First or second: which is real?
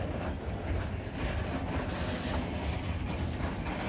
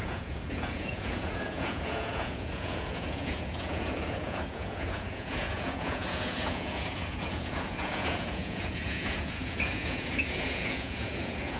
first